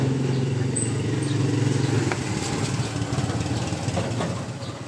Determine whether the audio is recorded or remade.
recorded